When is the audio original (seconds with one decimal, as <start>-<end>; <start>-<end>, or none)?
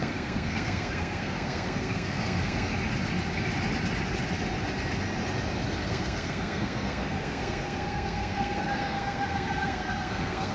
2.7-5.8